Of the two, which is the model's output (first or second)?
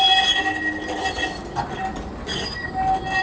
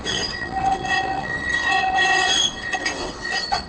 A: second